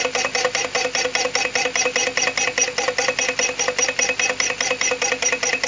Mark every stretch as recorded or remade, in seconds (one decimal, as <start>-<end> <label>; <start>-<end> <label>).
0.0-5.7 recorded